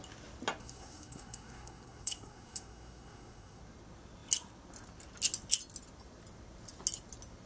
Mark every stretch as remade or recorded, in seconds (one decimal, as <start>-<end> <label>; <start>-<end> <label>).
0.0-0.6 recorded; 0.6-3.6 remade; 3.6-7.5 recorded